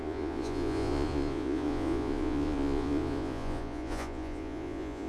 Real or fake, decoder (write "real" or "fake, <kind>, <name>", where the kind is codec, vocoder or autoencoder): fake, vocoder, Vocos